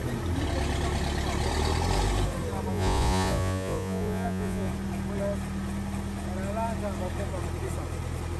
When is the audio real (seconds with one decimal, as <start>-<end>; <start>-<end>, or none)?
0.0-2.7; 4.7-8.4